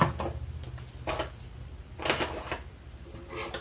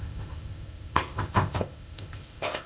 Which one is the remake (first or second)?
second